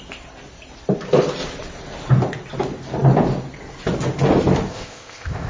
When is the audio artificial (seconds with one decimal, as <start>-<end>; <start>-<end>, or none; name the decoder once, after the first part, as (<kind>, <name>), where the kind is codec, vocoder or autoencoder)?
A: 4.7-5.5 (codec, ZipCodec)